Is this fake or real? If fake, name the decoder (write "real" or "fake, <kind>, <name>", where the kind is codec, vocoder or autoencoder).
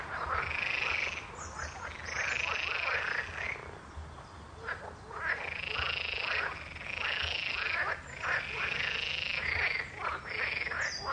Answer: real